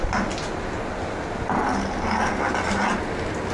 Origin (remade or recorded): recorded